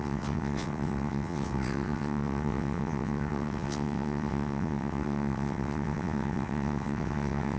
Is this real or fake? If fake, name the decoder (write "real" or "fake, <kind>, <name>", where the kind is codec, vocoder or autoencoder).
fake, vocoder, WaveNeXt